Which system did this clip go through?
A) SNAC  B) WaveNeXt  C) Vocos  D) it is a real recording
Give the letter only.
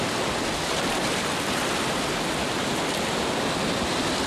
D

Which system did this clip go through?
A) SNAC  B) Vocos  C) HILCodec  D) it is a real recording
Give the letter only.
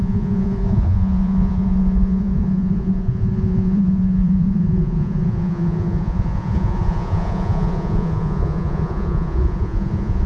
B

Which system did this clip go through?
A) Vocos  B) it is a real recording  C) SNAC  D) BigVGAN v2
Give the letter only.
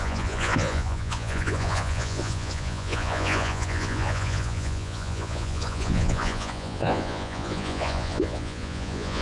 A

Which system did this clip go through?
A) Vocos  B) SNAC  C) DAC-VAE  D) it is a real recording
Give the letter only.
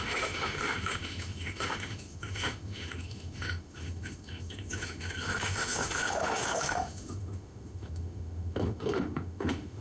C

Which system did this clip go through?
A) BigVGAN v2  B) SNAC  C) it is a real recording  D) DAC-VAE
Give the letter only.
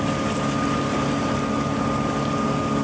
C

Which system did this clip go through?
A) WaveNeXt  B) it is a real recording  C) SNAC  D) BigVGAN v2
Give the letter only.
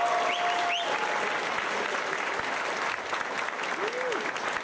B